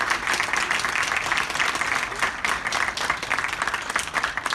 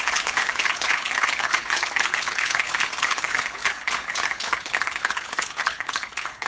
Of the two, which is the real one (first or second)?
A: first